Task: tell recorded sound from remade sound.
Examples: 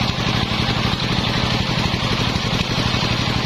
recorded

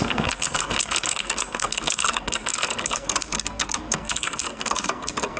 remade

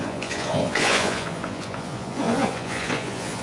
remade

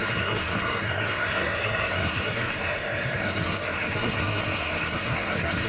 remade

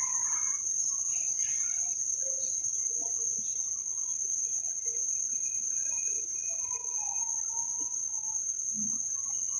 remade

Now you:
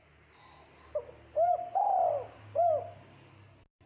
recorded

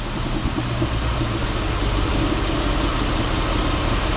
remade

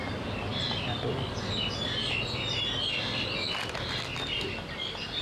recorded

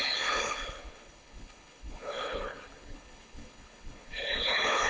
remade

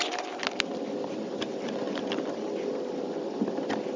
recorded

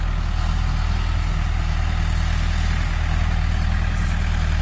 recorded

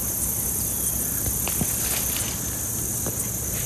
recorded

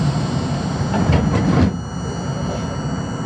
recorded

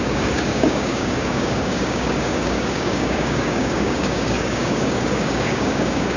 remade